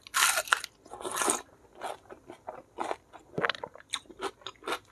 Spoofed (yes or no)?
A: no